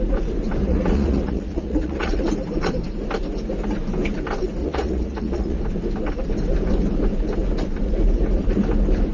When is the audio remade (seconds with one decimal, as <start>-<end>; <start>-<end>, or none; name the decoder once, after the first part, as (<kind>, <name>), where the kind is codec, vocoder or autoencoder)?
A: 0.6-2.2 (vocoder, Vocos); 4.6-5.6